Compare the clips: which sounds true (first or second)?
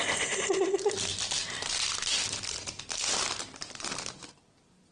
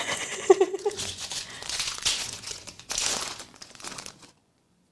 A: first